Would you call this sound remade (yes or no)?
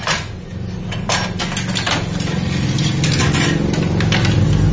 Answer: no